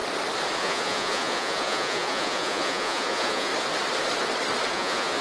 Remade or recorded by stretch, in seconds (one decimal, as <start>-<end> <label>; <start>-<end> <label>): 0.0-0.6 recorded; 0.6-3.5 remade; 3.5-4.7 recorded; 4.7-5.2 remade